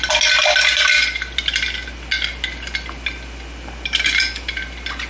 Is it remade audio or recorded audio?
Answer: recorded